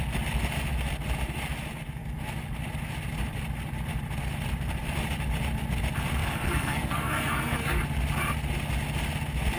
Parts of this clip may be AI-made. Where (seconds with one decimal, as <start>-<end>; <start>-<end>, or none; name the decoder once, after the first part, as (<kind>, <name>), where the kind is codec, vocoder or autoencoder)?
6.2-7.8 (codec, SNAC)